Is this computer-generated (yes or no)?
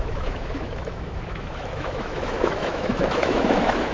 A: yes